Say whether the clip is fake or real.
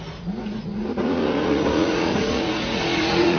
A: fake